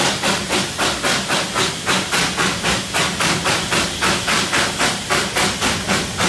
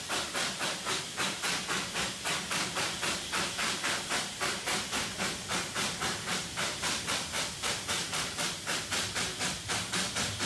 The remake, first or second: second